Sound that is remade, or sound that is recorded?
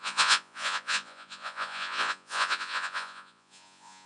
remade